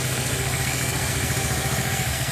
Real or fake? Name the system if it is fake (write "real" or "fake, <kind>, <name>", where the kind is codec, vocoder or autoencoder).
fake, codec, SNAC